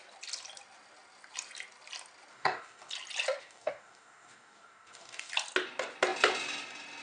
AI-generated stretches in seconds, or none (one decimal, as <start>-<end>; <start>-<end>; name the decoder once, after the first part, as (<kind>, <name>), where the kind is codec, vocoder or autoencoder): 2.3-2.9 (codec, DAC); 3.4-5.3